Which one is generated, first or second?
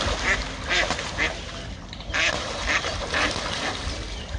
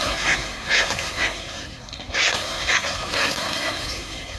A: second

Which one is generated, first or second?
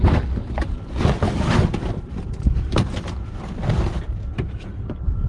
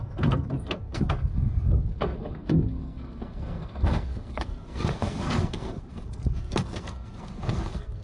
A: second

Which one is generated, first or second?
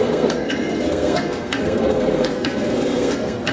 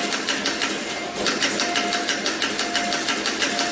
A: first